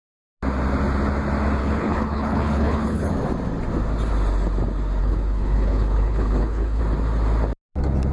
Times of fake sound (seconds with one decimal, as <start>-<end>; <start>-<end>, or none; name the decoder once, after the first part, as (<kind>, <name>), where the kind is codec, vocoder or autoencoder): 1.6-3.1 (codec, HILCodec); 5.0-6.8